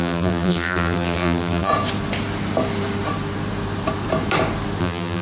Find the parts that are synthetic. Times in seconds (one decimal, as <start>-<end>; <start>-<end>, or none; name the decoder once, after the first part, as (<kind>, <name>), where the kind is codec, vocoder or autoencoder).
0.0-1.7 (vocoder, BigVGAN v2); 4.8-5.2